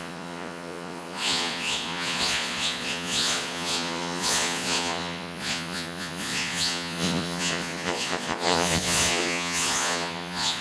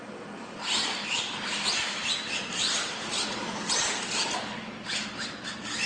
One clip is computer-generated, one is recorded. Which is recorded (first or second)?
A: second